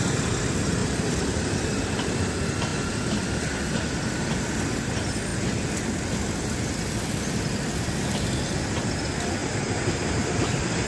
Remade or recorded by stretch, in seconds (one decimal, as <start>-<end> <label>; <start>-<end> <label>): 0.0-0.8 recorded; 0.8-2.1 remade; 2.1-9.4 recorded; 9.4-10.9 remade